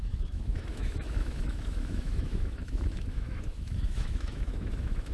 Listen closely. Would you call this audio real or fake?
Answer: fake